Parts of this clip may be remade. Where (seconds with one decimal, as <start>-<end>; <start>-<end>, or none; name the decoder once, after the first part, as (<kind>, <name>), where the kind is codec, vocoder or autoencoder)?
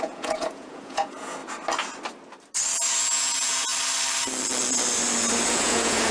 0.0-1.4 (vocoder, Vocos); 2.9-3.7; 5.5-6.1